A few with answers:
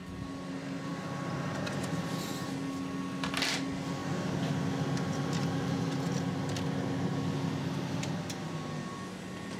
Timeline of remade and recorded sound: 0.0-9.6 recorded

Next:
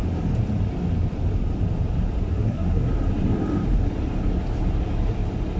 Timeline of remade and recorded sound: 0.0-2.3 recorded; 2.3-2.9 remade; 2.9-5.6 recorded